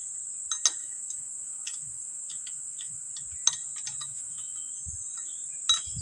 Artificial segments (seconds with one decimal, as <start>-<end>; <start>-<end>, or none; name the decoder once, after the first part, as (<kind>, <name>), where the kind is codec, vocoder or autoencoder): 0.8-3.1 (autoencoder, DAC-VAE); 4.0-4.7